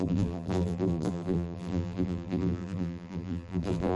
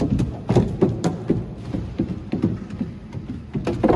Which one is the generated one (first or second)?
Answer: first